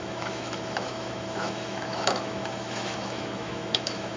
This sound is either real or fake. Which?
fake